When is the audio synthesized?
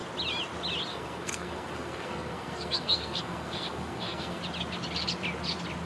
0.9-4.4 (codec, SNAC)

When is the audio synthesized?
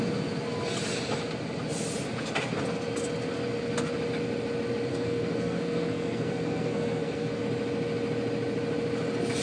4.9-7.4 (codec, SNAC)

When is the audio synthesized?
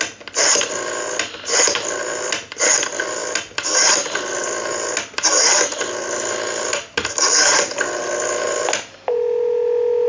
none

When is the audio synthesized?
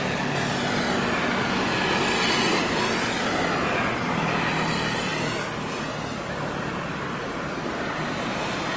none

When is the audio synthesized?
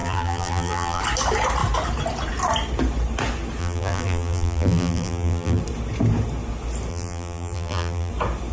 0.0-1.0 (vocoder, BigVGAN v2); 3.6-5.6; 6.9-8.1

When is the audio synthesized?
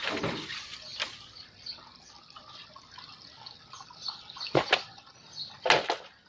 none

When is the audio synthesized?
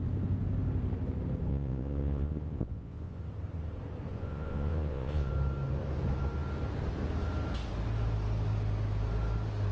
1.5-3.2 (vocoder, Vocos); 4.1-5.3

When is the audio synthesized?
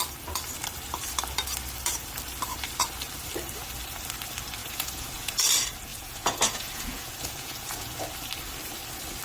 4.6-5.3 (vocoder, Vocos); 5.9-8.0